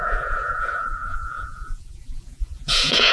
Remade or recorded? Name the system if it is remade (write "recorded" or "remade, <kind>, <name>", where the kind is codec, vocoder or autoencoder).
remade, vocoder, Vocos